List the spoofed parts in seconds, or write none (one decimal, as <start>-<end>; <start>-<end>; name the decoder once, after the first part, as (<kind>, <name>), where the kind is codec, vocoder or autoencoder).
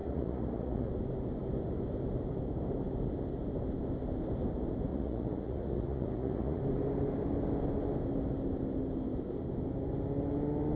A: 0.0-0.9 (vocoder, Vocos); 4.9-6.6